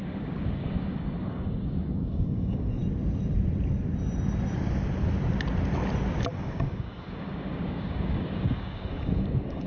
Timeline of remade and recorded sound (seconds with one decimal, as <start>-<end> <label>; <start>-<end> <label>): 0.0-2.8 remade; 2.8-6.3 recorded; 6.3-9.7 remade